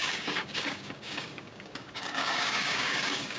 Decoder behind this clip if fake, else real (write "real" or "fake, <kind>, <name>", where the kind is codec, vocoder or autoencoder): fake, codec, DAC